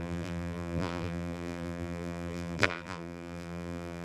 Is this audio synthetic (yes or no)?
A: yes